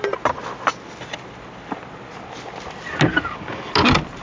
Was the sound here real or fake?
real